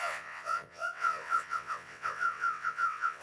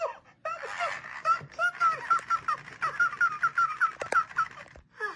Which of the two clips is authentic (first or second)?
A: second